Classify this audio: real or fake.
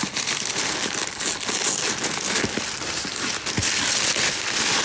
real